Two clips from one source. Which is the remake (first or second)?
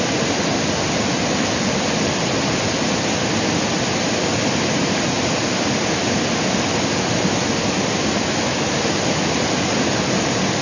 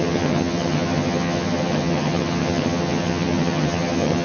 second